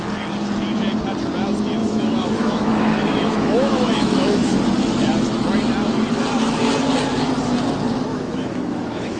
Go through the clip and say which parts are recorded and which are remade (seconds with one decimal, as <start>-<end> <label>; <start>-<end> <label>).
0.0-1.8 recorded; 1.8-4.6 remade; 4.6-8.1 recorded; 8.1-9.2 remade